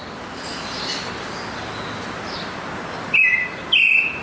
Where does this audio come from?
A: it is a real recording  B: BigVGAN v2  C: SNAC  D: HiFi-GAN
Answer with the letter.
A